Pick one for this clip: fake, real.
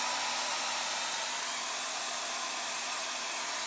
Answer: real